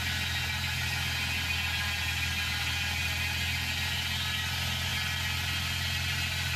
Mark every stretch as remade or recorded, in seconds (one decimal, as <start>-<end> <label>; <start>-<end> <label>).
0.0-6.6 recorded